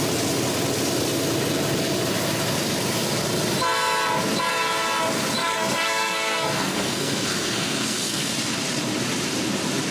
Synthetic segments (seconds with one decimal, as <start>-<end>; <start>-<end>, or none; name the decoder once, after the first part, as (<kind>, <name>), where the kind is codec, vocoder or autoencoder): 5.4-8.3 (codec, SNAC)